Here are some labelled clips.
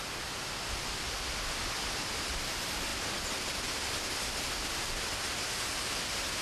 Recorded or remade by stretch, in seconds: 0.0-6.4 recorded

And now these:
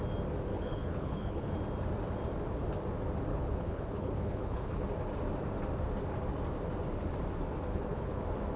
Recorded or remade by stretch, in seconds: 0.0-0.5 recorded; 0.5-1.5 remade; 1.5-3.3 recorded; 3.3-4.8 remade; 4.8-7.7 recorded; 7.7-8.2 remade; 8.2-8.6 recorded

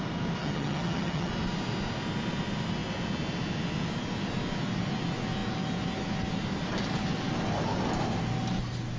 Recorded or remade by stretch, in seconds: 0.0-0.4 recorded; 0.4-1.3 remade; 1.3-9.0 recorded

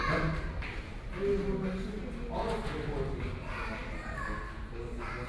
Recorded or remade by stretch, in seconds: 0.0-5.3 recorded

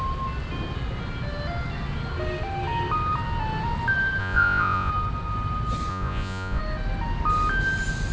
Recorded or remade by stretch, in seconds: 0.0-4.2 recorded; 4.2-4.9 remade; 4.9-5.9 recorded; 5.9-6.6 remade; 6.6-8.1 recorded

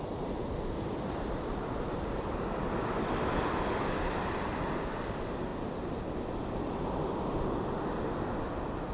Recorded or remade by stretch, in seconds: 0.0-0.4 recorded; 0.4-3.8 remade; 3.8-8.9 recorded